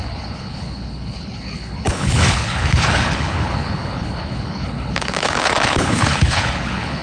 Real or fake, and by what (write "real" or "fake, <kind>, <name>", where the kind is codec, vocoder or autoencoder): fake, codec, HILCodec